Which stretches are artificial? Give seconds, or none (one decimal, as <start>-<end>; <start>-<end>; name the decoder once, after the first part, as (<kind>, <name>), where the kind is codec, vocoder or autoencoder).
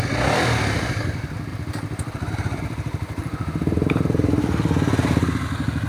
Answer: 1.5-4.4 (vocoder, BigVGAN v2)